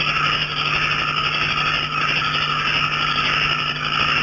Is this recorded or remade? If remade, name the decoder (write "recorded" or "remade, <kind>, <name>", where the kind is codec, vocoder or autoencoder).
recorded